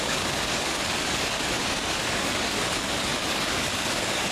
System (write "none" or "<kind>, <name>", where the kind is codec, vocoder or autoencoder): codec, DAC